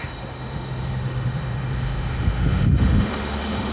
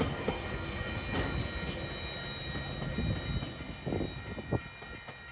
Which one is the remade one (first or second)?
first